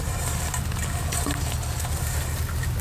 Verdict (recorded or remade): recorded